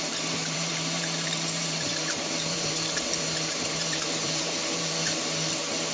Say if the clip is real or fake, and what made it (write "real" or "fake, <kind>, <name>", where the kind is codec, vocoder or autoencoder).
fake, vocoder, BigVGAN v2